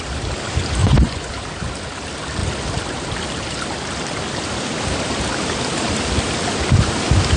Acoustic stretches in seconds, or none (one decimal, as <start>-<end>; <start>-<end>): 0.0-0.8; 1.3-7.4